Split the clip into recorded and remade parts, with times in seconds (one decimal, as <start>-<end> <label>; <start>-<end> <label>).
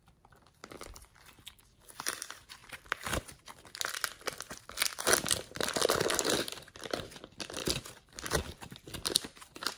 0.0-9.8 remade